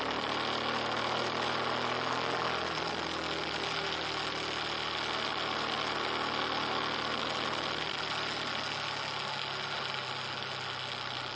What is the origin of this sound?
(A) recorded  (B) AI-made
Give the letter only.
A